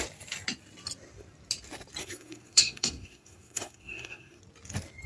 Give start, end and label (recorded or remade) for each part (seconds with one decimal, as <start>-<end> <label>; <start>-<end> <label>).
0.0-2.0 recorded; 2.0-4.4 remade; 4.4-5.1 recorded